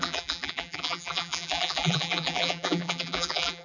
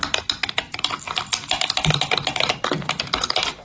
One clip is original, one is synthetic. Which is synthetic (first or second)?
first